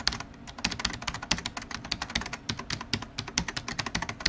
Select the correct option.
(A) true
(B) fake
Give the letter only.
A